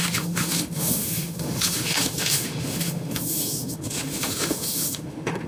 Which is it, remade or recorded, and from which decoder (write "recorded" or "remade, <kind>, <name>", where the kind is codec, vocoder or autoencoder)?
remade, autoencoder, DAC-VAE